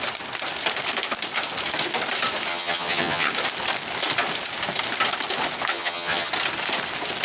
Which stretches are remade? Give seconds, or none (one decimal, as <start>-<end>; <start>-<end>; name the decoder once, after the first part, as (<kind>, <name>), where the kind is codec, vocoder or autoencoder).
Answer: 2.5-3.3 (vocoder, HiFi-GAN); 5.7-6.3